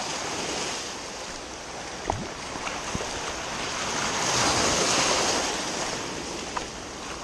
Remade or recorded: recorded